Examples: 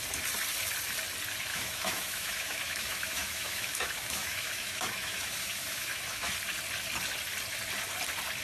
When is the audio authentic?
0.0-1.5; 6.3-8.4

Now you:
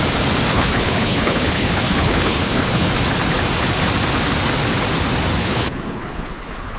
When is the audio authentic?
0.0-0.5; 2.9-5.4

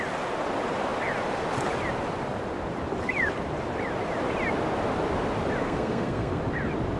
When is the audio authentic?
0.0-5.6; 6.4-7.0

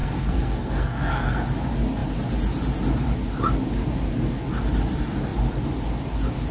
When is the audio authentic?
1.4-6.5

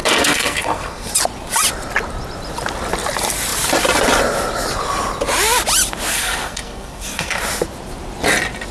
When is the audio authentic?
1.1-6.1; 7.4-8.7